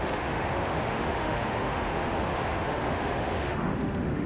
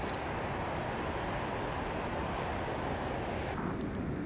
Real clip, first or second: second